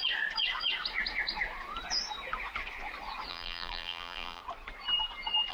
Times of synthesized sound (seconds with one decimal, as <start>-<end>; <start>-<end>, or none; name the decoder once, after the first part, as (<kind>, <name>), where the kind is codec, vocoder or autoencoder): 3.3-4.4 (vocoder, BigVGAN v2)